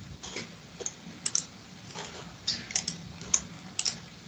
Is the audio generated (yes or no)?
no